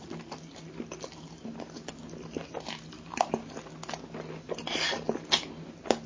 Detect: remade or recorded recorded